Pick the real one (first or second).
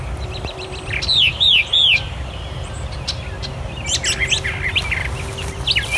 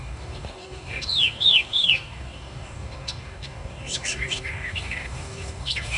first